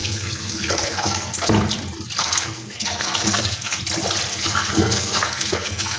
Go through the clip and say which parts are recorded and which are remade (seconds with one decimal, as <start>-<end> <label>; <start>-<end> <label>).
0.0-1.5 remade; 1.5-2.2 recorded; 2.2-3.8 remade; 3.8-4.3 recorded; 4.3-6.0 remade